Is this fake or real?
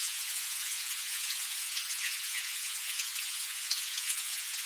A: fake